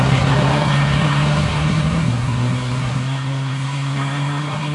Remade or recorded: remade